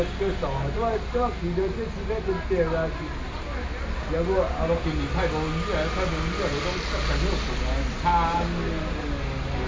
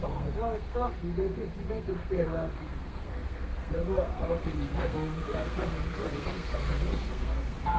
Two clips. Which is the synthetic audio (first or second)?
second